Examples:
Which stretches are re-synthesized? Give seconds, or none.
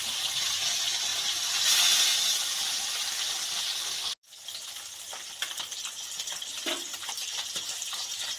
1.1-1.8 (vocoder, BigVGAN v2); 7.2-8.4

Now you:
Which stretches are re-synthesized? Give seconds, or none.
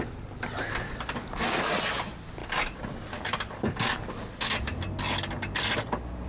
none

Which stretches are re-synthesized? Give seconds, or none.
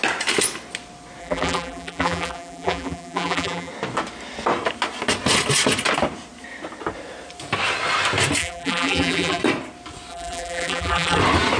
1.2-3.7 (vocoder, BigVGAN v2); 8.4-9.4; 10.1-11.2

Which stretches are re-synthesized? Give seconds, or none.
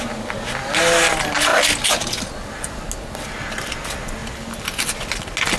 none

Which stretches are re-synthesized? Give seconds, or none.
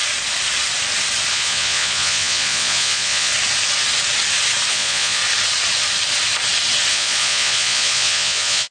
1.3-3.3 (vocoder, Vocos); 4.7-5.2; 6.9-8.7